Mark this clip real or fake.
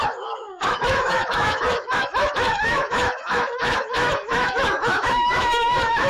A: fake